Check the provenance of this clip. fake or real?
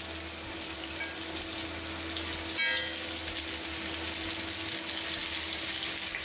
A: real